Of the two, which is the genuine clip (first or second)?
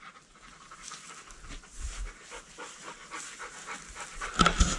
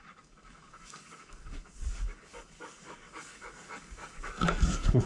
first